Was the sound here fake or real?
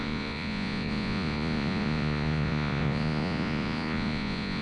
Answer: fake